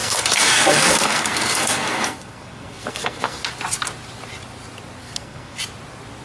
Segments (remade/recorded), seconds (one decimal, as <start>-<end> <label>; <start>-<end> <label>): 0.0-3.5 remade; 3.5-5.0 recorded; 5.0-5.6 remade; 5.6-6.2 recorded